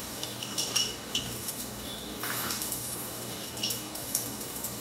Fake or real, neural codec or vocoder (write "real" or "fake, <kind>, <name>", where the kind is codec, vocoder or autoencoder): fake, codec, DAC